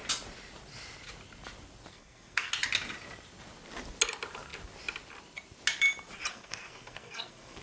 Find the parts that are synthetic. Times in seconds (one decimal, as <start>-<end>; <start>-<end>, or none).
1.9-2.5; 6.3-7.6